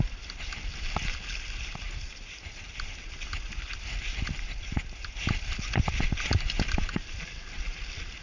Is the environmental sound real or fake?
real